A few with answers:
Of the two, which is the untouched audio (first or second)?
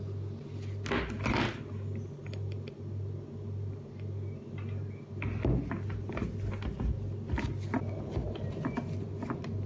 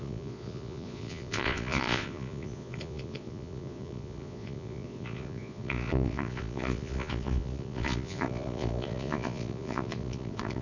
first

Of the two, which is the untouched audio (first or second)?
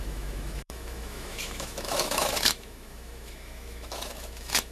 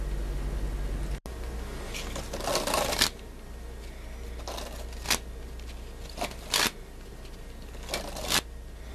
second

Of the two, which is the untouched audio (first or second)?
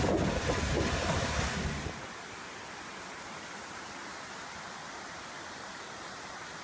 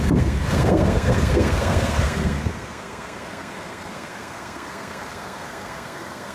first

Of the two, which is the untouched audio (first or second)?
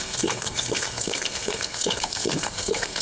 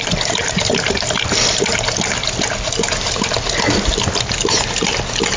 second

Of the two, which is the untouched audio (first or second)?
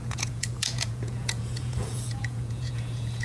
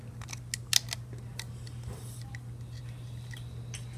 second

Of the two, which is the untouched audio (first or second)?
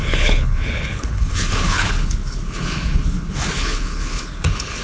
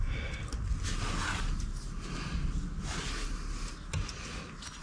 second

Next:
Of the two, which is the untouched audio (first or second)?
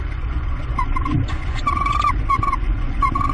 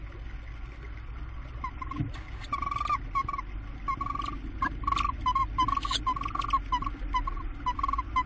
second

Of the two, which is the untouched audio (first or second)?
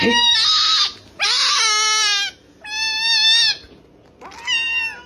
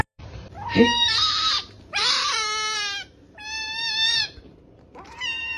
first